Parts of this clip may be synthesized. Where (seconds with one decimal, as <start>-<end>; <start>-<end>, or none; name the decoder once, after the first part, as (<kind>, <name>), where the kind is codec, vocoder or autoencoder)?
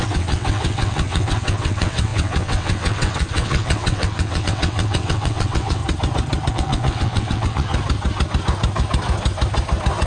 0.0-5.8 (vocoder, WaveNeXt); 6.5-7.7